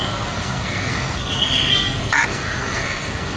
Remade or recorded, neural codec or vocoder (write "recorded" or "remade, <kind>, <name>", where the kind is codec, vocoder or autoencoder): remade, codec, SNAC